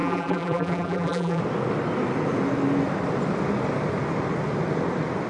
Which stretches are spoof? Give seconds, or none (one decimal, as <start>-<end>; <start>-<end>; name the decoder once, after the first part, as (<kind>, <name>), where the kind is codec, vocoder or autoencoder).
0.0-1.4 (vocoder, BigVGAN v2)